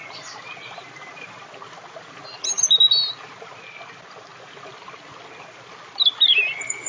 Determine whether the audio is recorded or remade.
recorded